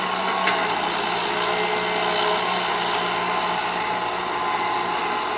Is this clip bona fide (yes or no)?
yes